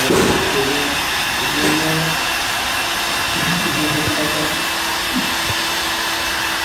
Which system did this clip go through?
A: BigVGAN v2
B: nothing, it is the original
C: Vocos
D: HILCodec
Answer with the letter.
B